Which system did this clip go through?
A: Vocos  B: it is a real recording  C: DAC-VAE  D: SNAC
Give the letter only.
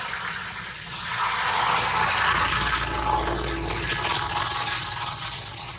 B